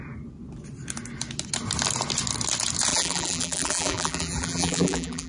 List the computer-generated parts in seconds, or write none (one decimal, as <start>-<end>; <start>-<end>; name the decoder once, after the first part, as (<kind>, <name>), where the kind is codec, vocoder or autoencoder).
2.9-5.3 (vocoder, BigVGAN v2)